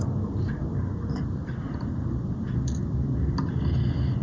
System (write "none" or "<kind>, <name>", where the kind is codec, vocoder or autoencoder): vocoder, BigVGAN v2